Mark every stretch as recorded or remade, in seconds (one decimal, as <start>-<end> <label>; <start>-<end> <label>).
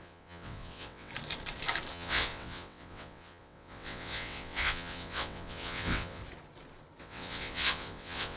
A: 0.0-1.1 remade; 1.1-1.9 recorded; 1.9-6.2 remade; 6.2-7.0 recorded; 7.0-8.4 remade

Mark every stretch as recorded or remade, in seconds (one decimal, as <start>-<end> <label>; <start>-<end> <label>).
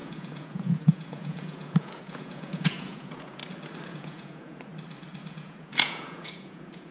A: 0.0-3.4 remade; 3.4-3.9 recorded; 3.9-4.7 remade; 4.7-5.3 recorded; 5.3-6.9 remade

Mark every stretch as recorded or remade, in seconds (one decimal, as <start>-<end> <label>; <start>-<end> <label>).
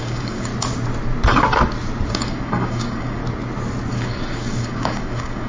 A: 0.0-0.5 remade; 0.5-2.1 recorded; 2.1-3.2 remade; 3.2-3.9 recorded; 3.9-5.5 remade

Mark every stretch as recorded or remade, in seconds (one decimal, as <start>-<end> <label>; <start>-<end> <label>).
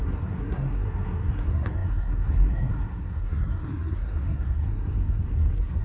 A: 0.0-5.8 remade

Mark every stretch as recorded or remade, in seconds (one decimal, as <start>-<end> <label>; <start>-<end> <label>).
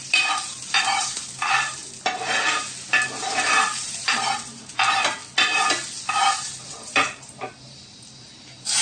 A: 0.0-1.8 remade; 1.8-3.2 recorded; 3.2-5.2 remade; 5.2-6.1 recorded; 6.1-8.8 remade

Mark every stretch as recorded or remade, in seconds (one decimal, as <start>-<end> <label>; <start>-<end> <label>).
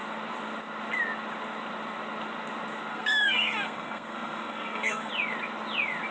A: 0.0-2.9 recorded; 2.9-5.1 remade; 5.1-6.1 recorded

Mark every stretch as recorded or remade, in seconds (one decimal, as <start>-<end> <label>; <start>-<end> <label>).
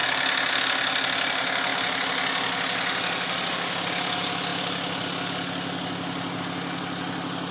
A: 0.0-7.5 recorded